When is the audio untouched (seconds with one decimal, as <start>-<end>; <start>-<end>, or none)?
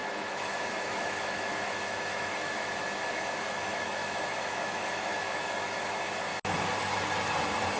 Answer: 6.3-7.8